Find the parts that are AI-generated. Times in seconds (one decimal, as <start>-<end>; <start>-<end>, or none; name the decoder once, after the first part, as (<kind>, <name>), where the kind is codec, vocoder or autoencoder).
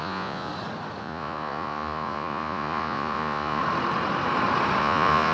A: 0.0-0.5 (vocoder, Vocos); 1.0-3.6; 4.8-5.3